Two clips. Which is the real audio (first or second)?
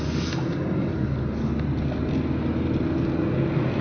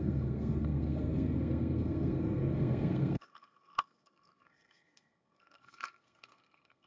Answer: first